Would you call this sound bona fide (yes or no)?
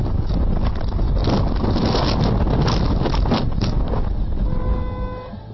yes